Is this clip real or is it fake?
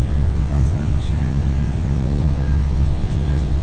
fake